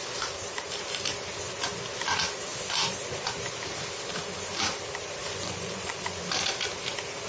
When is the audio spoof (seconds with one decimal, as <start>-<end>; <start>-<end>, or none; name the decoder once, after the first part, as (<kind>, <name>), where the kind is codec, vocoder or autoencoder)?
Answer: 5.2-6.2 (vocoder, Vocos)